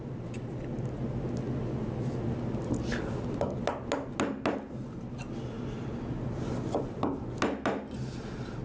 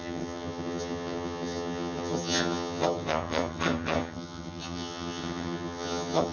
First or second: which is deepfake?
second